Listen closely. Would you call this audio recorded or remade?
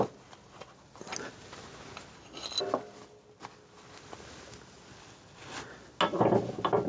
recorded